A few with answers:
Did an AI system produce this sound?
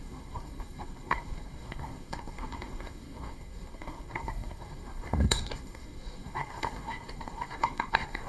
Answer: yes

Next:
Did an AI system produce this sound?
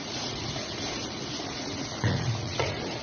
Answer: yes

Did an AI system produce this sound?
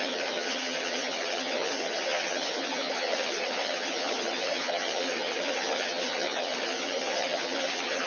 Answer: yes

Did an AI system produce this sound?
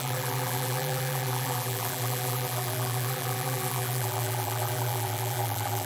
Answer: yes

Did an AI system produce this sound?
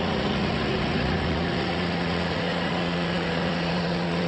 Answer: yes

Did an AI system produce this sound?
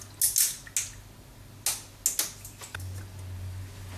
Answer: no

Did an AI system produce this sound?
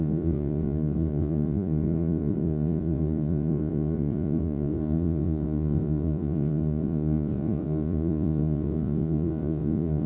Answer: yes